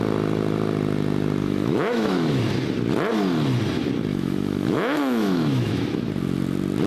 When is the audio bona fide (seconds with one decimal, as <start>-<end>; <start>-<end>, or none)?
0.0-1.4; 2.4-4.1; 6.1-6.9